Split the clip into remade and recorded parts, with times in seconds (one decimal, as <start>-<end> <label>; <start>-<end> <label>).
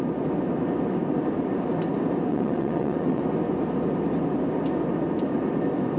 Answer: 0.0-2.3 recorded; 2.3-3.2 remade; 3.2-6.0 recorded